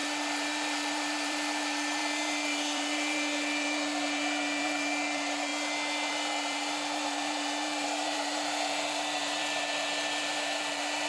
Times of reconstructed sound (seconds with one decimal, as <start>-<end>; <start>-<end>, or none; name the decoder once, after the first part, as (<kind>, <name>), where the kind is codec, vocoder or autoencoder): 0.0-5.5 (vocoder, BigVGAN v2); 6.1-11.1